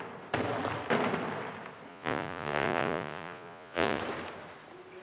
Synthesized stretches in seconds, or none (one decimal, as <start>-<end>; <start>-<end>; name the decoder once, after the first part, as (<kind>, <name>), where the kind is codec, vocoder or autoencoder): 1.9-4.0 (vocoder, Vocos)